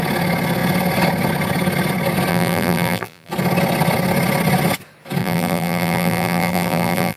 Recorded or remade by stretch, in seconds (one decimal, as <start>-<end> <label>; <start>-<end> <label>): 0.0-2.3 recorded; 2.3-3.3 remade; 3.3-5.2 recorded; 5.2-7.2 remade